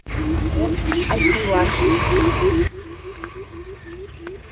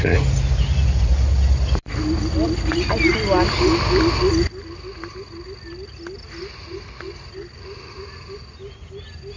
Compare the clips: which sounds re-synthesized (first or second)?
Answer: first